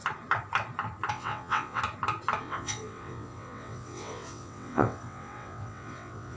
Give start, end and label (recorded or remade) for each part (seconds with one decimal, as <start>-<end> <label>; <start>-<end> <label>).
0.0-1.1 recorded; 1.1-1.8 remade; 1.8-2.4 recorded; 2.4-6.4 remade